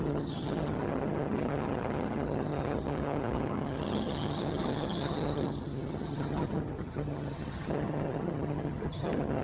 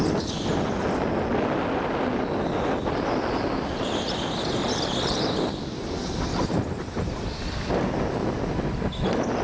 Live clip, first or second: second